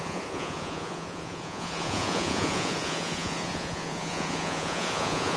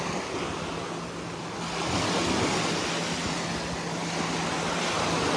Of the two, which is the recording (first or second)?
second